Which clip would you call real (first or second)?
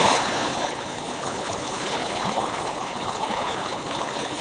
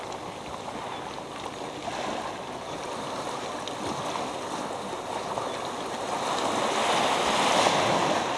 second